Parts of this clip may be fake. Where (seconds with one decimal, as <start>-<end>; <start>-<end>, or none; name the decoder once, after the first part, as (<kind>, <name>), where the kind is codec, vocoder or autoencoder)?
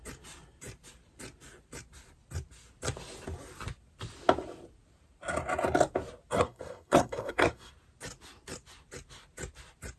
6.4-7.7 (codec, SNAC)